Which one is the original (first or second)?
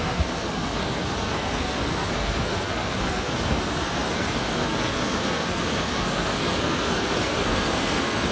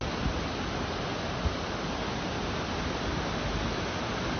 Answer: second